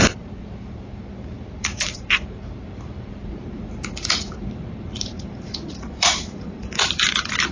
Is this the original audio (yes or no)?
no